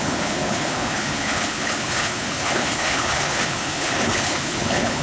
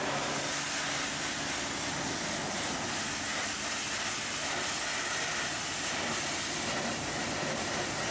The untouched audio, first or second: second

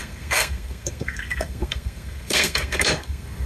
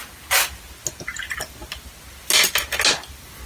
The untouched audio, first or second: second